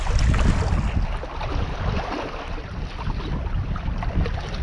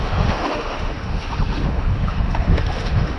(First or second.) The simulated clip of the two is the second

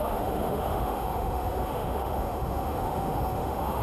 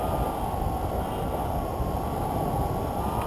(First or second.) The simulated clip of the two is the first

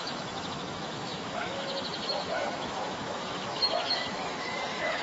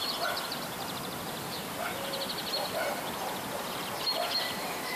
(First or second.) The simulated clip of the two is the first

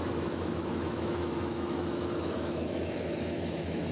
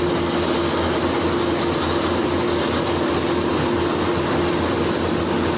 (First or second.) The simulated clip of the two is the first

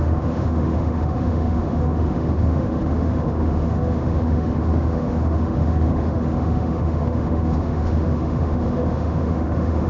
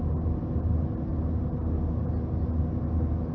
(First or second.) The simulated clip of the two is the first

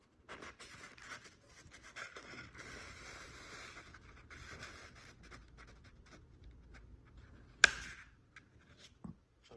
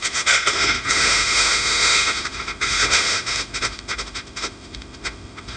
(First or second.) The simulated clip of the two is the second